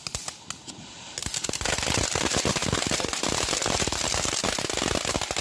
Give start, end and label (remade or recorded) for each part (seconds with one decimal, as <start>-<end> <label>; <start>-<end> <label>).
0.0-1.2 recorded; 1.2-4.4 remade; 4.4-5.4 recorded

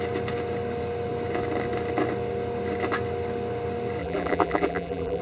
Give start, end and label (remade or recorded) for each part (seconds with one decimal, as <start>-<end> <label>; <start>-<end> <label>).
0.0-4.0 recorded; 4.0-5.2 remade

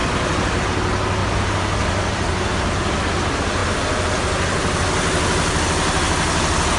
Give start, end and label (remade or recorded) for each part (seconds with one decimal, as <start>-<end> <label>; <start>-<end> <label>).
0.0-1.2 recorded; 1.2-2.4 remade; 2.4-6.8 recorded

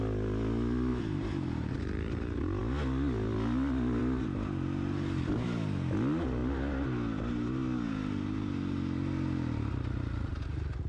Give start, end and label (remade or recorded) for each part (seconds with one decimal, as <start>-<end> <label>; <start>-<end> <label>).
0.0-0.9 recorded; 0.9-1.8 remade; 1.8-10.9 recorded

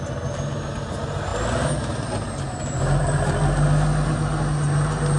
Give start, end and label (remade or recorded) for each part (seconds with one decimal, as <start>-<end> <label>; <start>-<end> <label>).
0.0-5.2 recorded